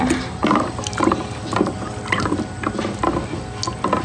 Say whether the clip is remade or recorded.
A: recorded